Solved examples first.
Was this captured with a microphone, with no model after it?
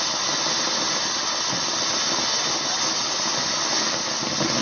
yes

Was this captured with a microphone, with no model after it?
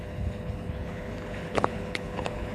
no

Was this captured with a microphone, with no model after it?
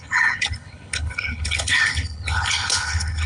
no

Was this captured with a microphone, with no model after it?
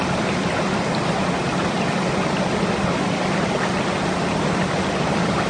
yes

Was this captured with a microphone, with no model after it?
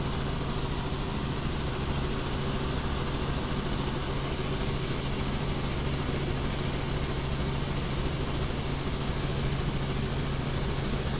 yes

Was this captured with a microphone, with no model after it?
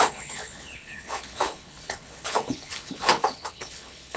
no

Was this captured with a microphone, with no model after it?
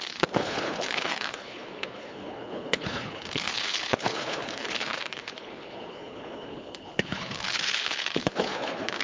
no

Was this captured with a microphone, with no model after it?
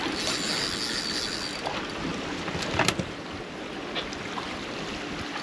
yes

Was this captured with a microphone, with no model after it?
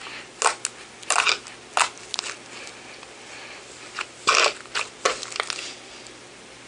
yes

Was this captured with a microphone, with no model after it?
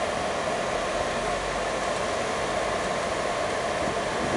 yes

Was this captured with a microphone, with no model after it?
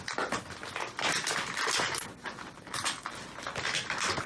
yes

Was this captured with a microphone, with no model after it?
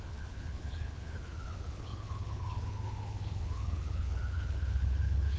no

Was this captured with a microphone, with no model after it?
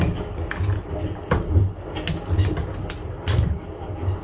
yes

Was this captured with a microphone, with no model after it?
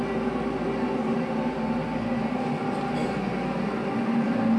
yes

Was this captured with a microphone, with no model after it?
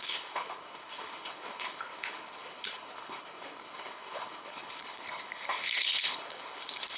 no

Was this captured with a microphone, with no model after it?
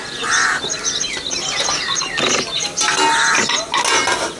yes